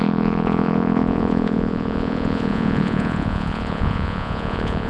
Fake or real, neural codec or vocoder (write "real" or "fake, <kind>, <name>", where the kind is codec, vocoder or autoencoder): fake, vocoder, Vocos